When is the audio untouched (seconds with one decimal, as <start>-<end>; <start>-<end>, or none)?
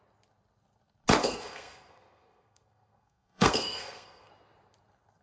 0.0-1.2; 4.3-5.2